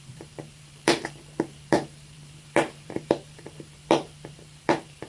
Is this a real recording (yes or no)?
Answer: no